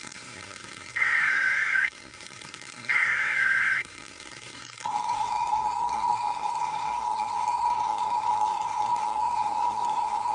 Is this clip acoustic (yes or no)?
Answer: no